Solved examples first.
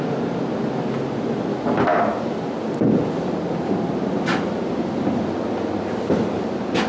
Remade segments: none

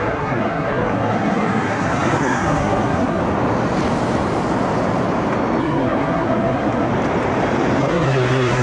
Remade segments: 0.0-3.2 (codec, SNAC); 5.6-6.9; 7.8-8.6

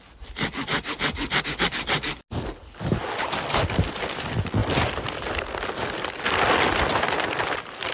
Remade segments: none

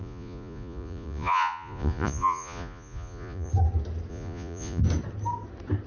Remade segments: 0.0-3.5 (vocoder, Vocos); 4.1-4.8

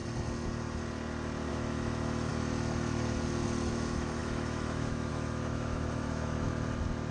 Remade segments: 1.5-2.3 (autoencoder, DAC-VAE); 3.7-6.5